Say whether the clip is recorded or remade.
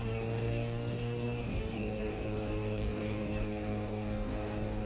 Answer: remade